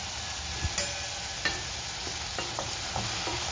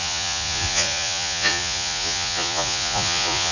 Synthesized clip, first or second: second